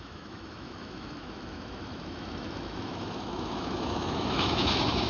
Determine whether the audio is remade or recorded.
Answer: remade